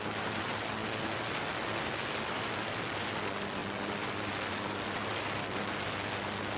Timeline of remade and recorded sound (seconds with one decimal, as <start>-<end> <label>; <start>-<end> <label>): 0.0-6.6 recorded

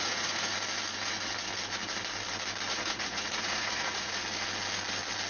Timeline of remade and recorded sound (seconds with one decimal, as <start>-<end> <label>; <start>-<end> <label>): 0.0-0.5 remade; 0.5-2.7 recorded; 2.7-4.2 remade; 4.2-5.3 recorded

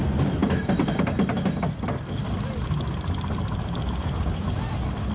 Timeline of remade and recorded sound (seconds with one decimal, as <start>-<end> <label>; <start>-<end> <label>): 0.0-0.4 recorded; 0.4-1.6 remade; 1.6-5.1 recorded

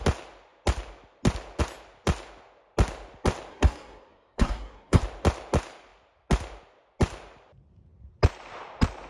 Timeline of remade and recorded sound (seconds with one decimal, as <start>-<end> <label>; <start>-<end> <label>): 0.0-3.5 recorded; 3.5-5.0 remade; 5.0-9.1 recorded